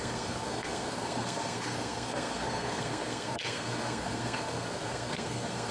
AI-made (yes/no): yes